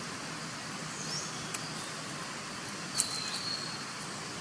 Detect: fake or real real